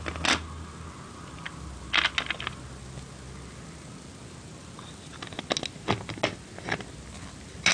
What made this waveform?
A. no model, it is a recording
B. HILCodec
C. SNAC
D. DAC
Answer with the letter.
A